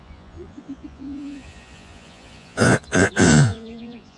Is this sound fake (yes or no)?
yes